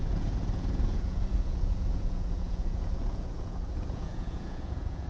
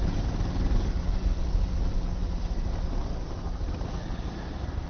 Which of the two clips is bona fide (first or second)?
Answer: second